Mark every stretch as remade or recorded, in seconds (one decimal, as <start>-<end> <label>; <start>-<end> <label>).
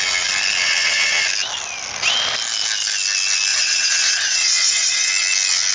0.0-3.5 recorded; 3.5-5.1 remade; 5.1-5.7 recorded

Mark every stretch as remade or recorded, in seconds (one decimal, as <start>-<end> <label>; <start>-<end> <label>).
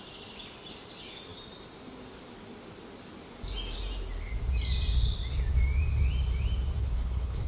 0.0-6.8 recorded; 6.8-7.5 remade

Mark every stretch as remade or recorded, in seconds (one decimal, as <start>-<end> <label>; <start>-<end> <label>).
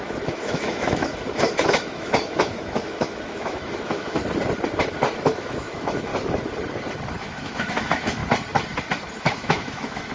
0.0-4.2 remade; 4.2-5.2 recorded; 5.2-6.1 remade; 6.1-7.2 recorded; 7.2-8.2 remade; 8.2-9.2 recorded; 9.2-10.1 remade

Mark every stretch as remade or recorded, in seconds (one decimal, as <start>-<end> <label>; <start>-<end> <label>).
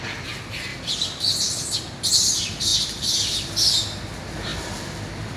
0.0-0.7 recorded; 0.7-1.8 remade; 1.8-2.7 recorded; 2.7-3.5 remade; 3.5-4.5 recorded; 4.5-5.4 remade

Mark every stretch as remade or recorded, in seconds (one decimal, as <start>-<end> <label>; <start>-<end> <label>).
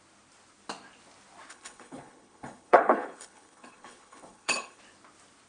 0.0-1.5 recorded; 1.5-4.8 remade; 4.8-5.5 recorded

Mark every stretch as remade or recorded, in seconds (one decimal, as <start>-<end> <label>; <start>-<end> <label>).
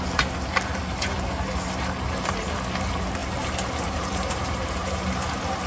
0.0-0.8 recorded; 0.8-1.5 remade; 1.5-3.2 recorded; 3.2-5.7 remade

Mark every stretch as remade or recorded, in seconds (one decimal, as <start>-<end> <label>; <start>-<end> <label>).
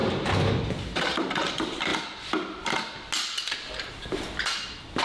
0.0-0.5 recorded; 0.5-1.9 remade; 1.9-5.0 recorded